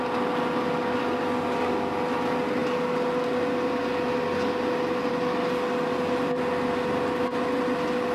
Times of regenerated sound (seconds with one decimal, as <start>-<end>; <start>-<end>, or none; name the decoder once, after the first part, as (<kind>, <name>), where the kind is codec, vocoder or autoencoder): none